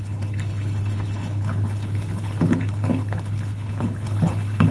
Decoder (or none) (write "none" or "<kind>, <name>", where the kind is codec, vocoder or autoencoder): codec, HILCodec